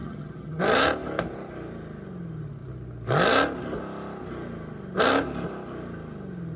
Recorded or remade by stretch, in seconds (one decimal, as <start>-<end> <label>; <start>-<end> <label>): 0.0-0.6 remade; 0.6-6.6 recorded